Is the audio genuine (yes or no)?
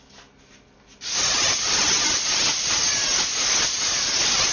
yes